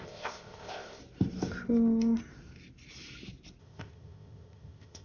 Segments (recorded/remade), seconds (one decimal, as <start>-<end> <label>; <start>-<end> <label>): 0.0-1.0 remade; 1.0-3.6 recorded; 3.6-5.0 remade